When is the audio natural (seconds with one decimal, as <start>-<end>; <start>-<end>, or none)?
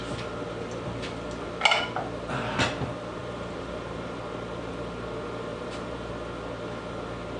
0.0-3.2; 4.2-5.5; 6.1-7.4